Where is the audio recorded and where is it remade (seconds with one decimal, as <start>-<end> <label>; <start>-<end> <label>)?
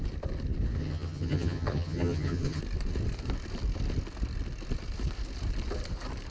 0.0-0.8 recorded; 0.8-2.6 remade; 2.6-6.3 recorded